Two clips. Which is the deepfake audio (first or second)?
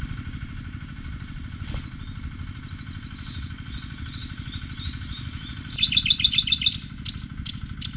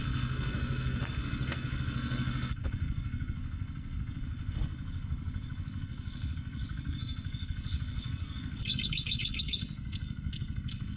second